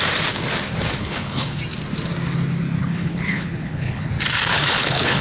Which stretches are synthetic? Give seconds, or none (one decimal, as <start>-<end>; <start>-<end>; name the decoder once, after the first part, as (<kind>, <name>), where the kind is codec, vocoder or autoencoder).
1.0-1.6 (codec, HILCodec); 2.8-4.1; 4.5-5.2

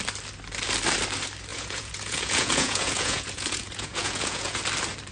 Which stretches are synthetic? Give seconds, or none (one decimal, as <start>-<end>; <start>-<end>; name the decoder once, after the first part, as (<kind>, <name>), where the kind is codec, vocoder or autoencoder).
1.5-4.6 (vocoder, Vocos)

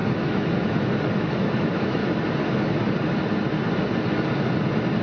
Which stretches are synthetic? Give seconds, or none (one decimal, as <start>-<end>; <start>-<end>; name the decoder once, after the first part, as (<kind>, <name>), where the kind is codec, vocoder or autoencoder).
0.0-2.0 (autoencoder, DAC-VAE)

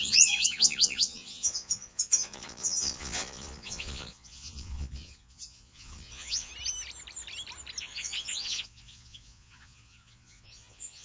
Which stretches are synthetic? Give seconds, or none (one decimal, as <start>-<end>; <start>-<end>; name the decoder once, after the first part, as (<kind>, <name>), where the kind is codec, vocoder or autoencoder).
0.0-6.5 (vocoder, Vocos); 7.8-11.0

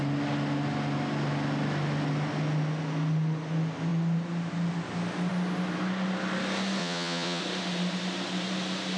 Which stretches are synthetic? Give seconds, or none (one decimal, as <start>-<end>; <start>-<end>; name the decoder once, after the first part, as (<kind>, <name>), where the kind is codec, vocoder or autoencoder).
6.8-7.4 (vocoder, Vocos)

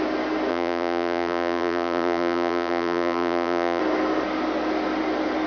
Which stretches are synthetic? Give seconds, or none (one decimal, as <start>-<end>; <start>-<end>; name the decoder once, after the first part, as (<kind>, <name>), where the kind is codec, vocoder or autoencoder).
0.5-3.8 (vocoder, BigVGAN v2)

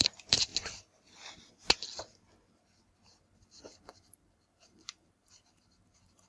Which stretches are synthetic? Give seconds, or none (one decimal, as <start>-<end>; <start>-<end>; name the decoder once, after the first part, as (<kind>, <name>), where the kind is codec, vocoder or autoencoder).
0.0-0.5 (vocoder, BigVGAN v2); 3.8-6.3

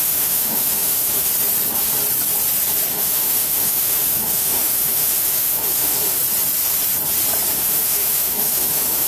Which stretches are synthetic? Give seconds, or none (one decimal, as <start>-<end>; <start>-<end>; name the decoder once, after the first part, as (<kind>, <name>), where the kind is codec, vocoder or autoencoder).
0.0-1.3 (autoencoder, DAC-VAE); 2.9-6.2; 7.5-9.1